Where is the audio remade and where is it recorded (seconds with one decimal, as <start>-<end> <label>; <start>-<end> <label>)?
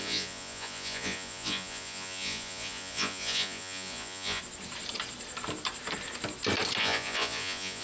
0.0-4.4 remade; 4.4-6.8 recorded; 6.8-7.8 remade